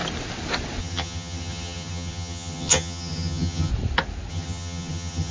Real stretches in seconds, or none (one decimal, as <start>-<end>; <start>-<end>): 0.0-0.8; 3.7-4.3